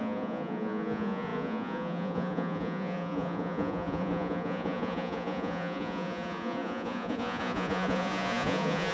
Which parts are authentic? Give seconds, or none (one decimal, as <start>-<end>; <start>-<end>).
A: none